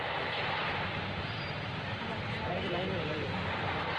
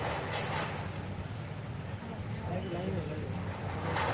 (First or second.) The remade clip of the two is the first